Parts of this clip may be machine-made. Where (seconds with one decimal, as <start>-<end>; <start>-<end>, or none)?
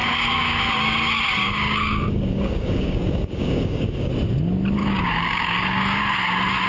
0.0-0.7; 1.4-4.1; 4.8-6.0